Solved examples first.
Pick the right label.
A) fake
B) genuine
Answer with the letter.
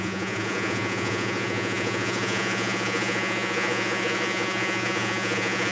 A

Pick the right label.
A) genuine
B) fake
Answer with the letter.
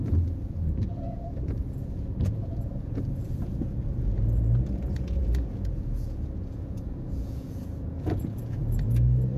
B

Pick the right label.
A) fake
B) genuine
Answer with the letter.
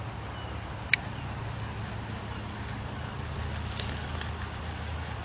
B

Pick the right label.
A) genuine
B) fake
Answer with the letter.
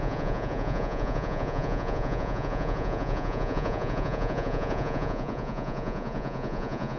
B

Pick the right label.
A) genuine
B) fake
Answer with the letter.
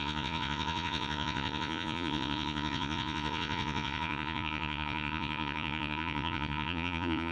B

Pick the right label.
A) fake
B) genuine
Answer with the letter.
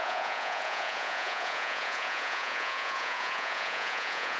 A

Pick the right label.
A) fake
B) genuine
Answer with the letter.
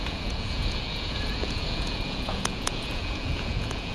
A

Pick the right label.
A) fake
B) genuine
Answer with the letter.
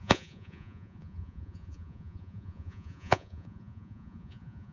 A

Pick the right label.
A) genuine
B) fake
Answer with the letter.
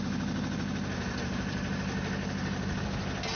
A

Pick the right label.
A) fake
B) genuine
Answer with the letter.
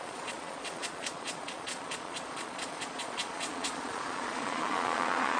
A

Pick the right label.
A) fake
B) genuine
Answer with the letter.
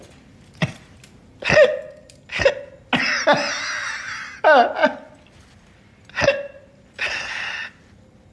B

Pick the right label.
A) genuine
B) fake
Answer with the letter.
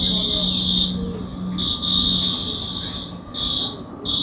A